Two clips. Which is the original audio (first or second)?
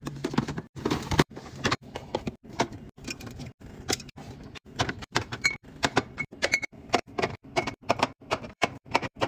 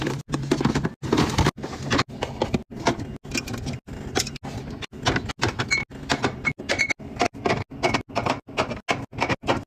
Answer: second